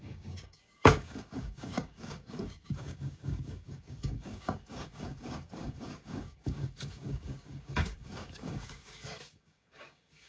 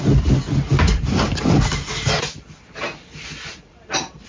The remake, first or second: first